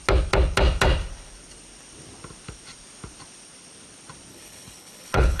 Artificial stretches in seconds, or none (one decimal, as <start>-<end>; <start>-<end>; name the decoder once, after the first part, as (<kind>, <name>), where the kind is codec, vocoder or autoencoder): 4.3-5.4 (codec, HILCodec)